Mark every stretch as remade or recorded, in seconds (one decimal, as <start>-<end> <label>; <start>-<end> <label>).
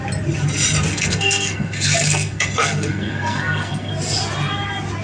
0.0-0.9 recorded; 0.9-3.9 remade; 3.9-5.0 recorded